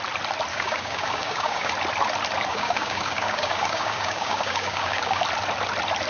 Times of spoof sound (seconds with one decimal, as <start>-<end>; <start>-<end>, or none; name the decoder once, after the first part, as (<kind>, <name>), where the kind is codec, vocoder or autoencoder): 0.5-1.7 (codec, DAC); 2.5-5.2